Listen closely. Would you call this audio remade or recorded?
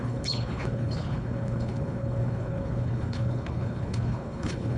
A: remade